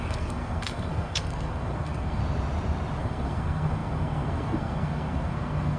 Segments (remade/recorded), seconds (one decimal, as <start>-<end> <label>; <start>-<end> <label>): 0.0-2.2 remade; 2.2-3.0 recorded; 3.0-5.8 remade